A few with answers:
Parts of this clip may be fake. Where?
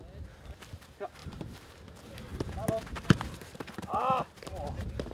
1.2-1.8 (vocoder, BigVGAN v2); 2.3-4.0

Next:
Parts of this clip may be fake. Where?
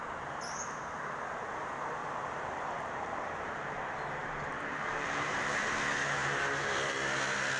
2.0-5.7 (vocoder, BigVGAN v2)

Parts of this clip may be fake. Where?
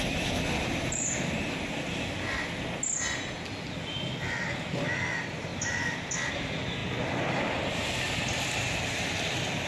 none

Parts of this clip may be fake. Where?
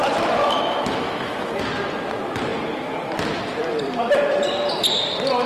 0.4-1.6 (autoencoder, DAC-VAE)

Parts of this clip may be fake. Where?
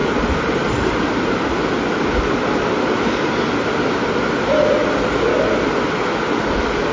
0.0-1.7 (vocoder, BigVGAN v2)